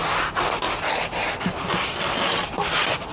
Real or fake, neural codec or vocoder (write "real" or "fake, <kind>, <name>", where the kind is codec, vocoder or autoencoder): real